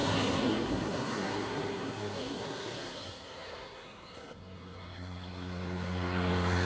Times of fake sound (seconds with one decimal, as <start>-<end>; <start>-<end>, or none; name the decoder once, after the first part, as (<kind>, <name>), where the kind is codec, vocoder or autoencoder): 0.0-6.7 (codec, SNAC)